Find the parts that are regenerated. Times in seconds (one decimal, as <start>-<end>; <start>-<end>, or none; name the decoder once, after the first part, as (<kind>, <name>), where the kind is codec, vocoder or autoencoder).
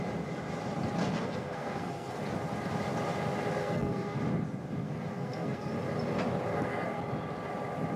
1.0-2.2 (codec, SNAC); 3.6-4.2; 4.8-5.7; 6.5-7.0